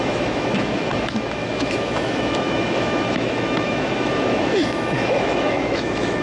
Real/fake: fake